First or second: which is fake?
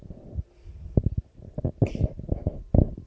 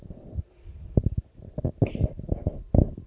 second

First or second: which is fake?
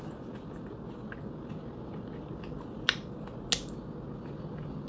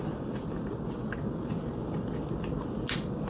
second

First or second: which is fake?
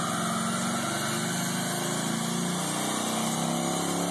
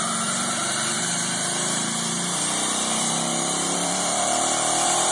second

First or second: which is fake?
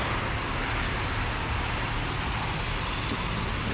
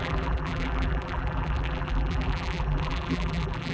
second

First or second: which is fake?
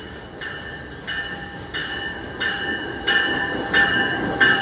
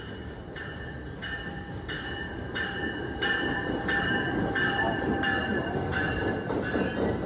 second